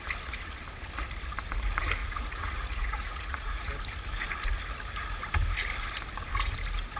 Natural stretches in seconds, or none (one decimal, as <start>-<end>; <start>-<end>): 0.0-2.0; 3.7-7.0